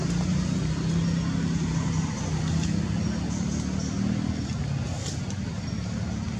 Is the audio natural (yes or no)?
yes